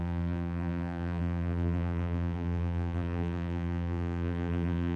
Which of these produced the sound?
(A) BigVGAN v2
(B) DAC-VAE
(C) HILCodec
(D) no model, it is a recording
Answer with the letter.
A